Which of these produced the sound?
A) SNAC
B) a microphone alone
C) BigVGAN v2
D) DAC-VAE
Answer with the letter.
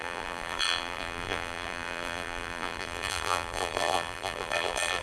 C